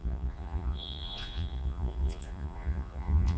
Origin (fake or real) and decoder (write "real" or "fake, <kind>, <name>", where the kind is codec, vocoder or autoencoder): fake, vocoder, Vocos